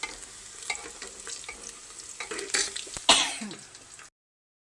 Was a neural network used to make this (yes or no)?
no